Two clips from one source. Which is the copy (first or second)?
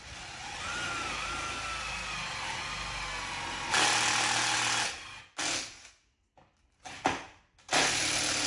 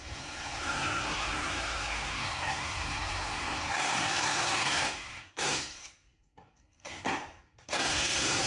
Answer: second